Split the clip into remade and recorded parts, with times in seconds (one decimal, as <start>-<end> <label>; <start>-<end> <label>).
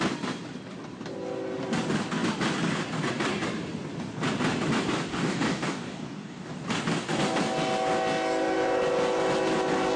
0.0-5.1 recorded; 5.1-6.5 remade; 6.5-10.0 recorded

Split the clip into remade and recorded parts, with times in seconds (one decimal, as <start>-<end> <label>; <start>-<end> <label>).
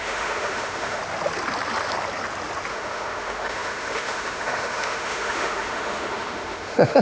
0.0-1.0 remade; 1.0-2.7 recorded; 2.7-7.0 remade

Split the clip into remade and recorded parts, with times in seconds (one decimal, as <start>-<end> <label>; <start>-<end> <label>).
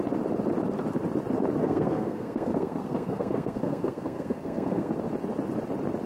0.0-1.6 recorded; 1.6-4.9 remade; 4.9-6.1 recorded